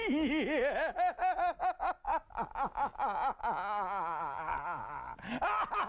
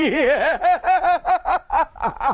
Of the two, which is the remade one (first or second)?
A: second